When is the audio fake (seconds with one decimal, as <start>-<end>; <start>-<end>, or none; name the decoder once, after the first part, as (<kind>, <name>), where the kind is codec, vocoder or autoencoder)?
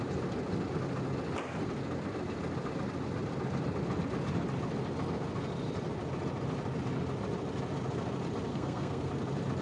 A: 8.5-9.1 (codec, SNAC)